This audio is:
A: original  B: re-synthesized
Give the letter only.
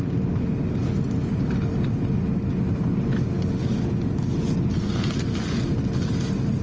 A